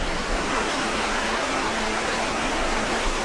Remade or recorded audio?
remade